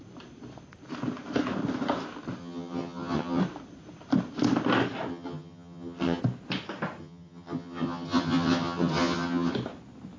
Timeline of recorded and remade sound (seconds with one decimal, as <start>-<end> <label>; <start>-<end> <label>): 0.0-2.4 recorded; 2.4-3.4 remade; 3.4-5.1 recorded; 5.1-6.2 remade; 6.2-7.0 recorded; 7.0-9.5 remade; 9.5-10.2 recorded